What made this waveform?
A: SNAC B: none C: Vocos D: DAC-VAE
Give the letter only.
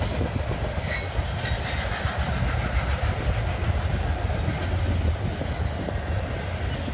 B